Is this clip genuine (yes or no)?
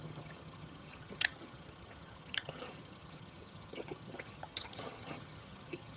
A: no